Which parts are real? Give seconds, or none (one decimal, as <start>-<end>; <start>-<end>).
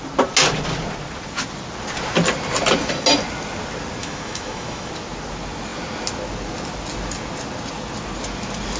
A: 0.0-4.0; 4.9-8.8